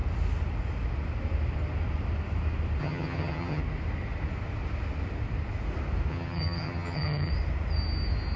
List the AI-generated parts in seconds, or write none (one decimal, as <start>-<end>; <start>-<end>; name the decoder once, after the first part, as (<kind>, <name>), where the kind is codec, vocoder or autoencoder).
2.8-3.6 (vocoder, HiFi-GAN); 6.1-7.3